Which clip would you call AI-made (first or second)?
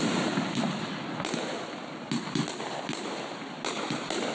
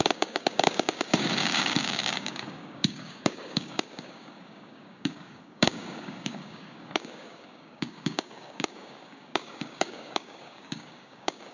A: second